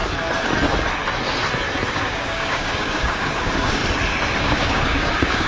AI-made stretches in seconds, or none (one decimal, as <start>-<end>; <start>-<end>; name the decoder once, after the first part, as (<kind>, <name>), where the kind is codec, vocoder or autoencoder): 1.9-3.8 (codec, DAC); 4.4-5.5